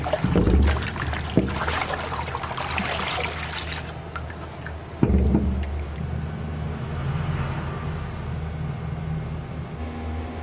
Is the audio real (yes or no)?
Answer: yes